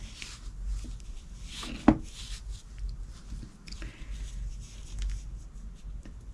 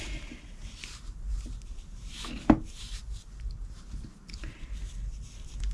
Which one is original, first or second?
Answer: first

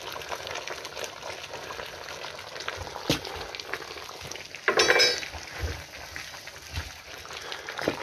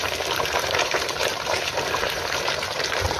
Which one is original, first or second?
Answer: first